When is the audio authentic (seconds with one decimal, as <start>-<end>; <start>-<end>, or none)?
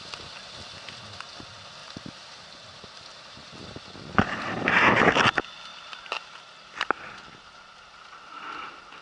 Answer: 0.0-1.8; 2.4-3.1; 3.6-5.7; 7.0-9.0